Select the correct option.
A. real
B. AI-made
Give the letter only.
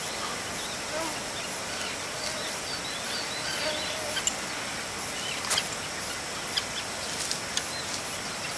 A